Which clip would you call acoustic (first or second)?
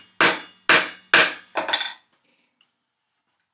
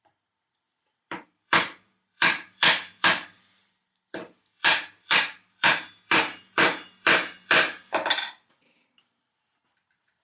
first